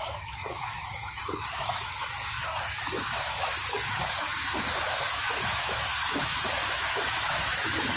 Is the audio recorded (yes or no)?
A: no